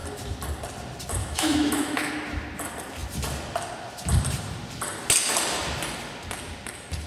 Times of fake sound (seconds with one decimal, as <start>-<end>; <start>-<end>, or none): 1.2-2.1